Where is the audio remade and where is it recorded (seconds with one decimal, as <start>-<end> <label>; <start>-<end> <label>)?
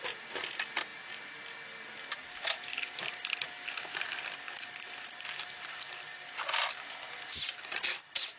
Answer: 0.0-8.4 recorded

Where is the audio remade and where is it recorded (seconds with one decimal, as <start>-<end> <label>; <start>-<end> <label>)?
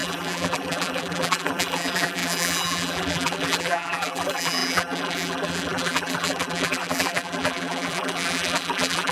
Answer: 0.0-9.1 remade